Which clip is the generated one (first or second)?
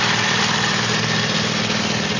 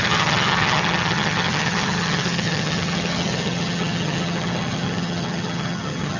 second